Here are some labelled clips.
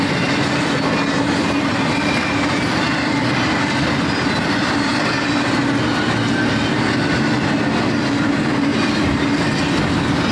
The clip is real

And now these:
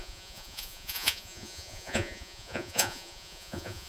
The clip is fake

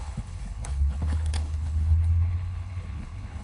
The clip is fake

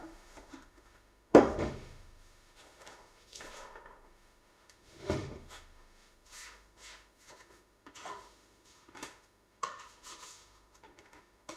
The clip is fake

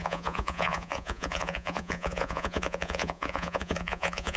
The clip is fake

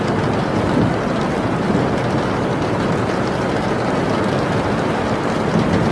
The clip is real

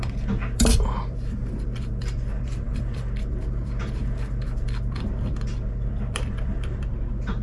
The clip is fake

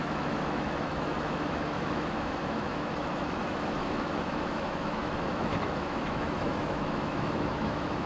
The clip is fake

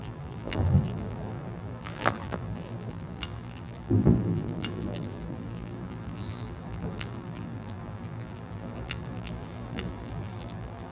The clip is fake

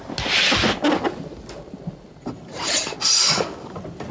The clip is real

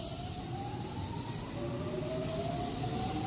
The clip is real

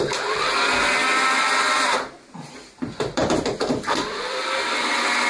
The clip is fake